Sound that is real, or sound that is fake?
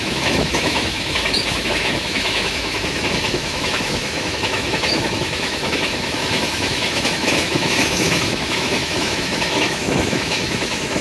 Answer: fake